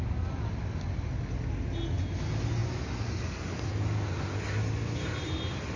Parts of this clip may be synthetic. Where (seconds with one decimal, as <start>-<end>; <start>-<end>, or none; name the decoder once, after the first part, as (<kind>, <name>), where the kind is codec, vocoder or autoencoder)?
none